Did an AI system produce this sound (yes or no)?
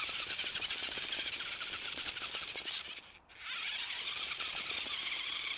yes